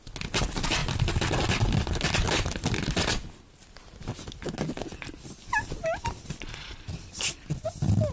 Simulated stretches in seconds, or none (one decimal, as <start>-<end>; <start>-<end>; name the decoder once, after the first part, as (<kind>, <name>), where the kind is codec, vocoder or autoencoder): none